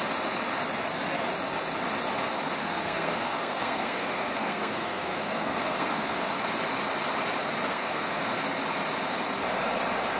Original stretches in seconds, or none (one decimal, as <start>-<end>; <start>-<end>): 0.0-2.6; 6.4-7.7; 8.4-10.2